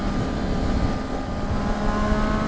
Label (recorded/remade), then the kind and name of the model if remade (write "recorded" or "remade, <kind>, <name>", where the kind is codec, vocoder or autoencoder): recorded